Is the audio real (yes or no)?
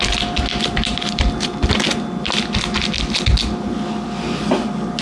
yes